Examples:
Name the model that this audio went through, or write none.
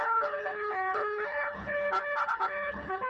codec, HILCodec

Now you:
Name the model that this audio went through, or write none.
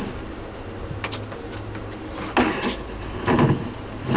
none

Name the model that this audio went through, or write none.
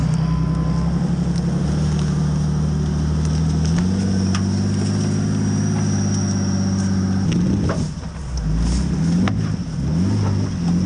none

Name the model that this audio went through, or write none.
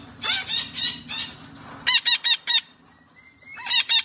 none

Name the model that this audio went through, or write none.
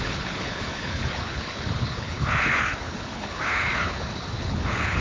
codec, HILCodec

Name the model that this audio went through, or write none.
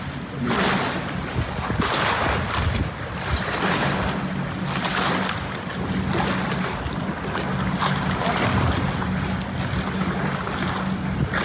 none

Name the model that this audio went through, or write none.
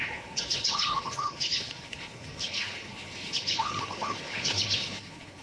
codec, HILCodec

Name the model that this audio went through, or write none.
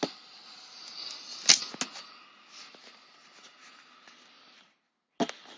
none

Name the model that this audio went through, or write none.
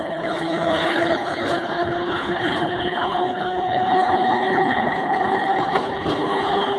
codec, HILCodec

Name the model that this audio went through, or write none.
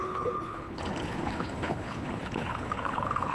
codec, HILCodec